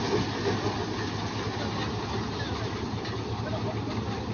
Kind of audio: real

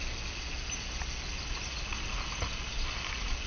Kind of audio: real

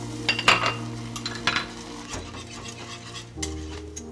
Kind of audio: real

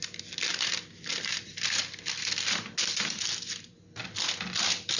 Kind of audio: real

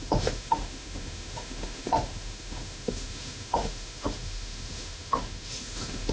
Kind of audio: fake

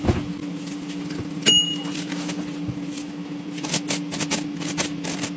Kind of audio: real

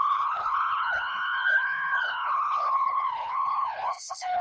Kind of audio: fake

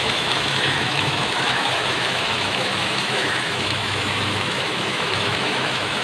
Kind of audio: fake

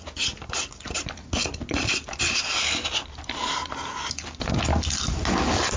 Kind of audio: real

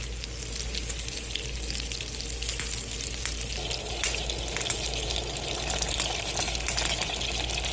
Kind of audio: real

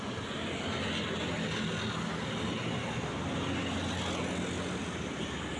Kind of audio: real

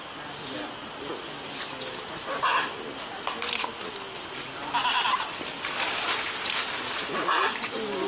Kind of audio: real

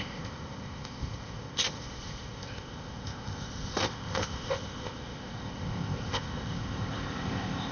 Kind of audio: fake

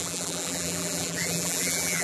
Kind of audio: fake